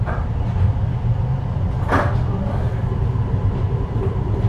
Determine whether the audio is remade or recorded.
remade